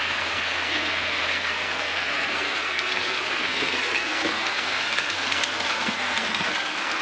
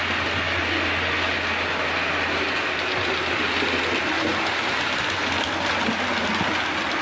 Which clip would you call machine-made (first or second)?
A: first